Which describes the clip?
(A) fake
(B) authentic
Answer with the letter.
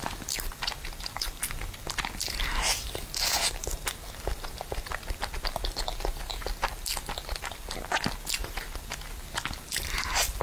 B